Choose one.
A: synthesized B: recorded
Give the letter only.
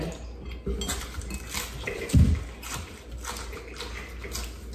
B